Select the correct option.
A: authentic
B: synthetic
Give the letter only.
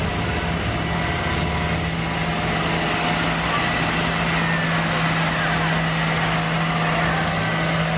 A